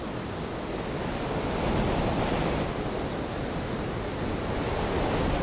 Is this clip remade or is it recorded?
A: recorded